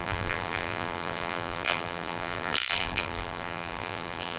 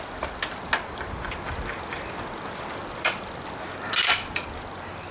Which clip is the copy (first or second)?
first